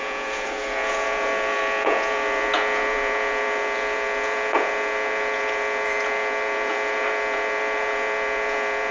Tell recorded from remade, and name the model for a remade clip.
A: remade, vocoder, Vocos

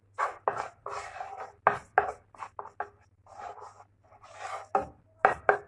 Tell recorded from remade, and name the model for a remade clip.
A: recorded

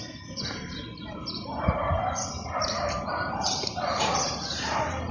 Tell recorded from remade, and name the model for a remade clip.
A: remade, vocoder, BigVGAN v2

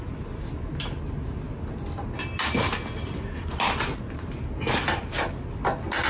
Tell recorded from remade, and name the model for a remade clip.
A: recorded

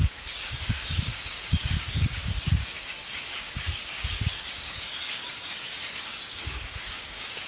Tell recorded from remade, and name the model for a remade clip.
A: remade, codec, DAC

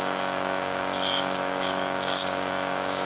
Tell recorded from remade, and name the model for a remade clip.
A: remade, codec, DAC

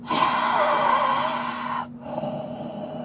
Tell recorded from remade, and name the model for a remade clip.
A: recorded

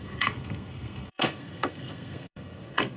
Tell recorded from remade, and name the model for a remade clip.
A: remade, codec, SNAC